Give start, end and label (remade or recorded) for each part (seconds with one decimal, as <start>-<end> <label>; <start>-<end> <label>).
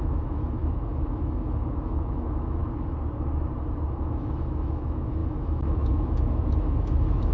0.0-2.6 remade; 2.6-3.9 recorded; 3.9-7.3 remade